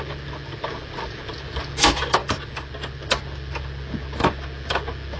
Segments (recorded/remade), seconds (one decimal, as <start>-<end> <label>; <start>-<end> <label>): 0.0-5.2 recorded